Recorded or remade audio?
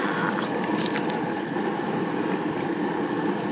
remade